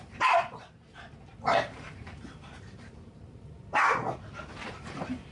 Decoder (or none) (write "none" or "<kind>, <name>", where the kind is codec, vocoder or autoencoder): vocoder, BigVGAN v2